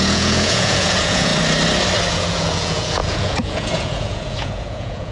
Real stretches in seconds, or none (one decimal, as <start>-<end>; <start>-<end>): 1.3-2.1